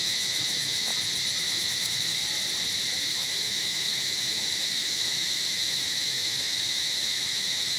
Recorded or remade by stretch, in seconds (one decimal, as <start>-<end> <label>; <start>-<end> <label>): 0.0-0.9 remade; 0.9-1.4 recorded; 1.4-2.2 remade; 2.2-3.0 recorded; 3.0-7.8 remade